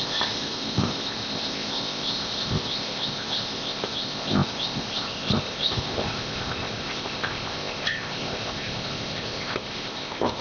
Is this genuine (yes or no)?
no